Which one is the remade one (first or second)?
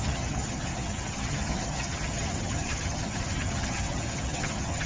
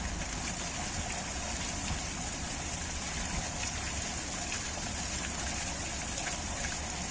first